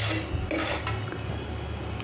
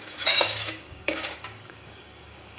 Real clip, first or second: first